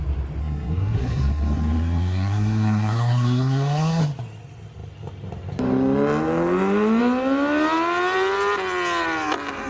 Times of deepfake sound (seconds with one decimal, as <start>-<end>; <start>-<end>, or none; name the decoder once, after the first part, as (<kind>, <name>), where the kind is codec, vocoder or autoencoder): 0.4-4.0 (codec, SNAC)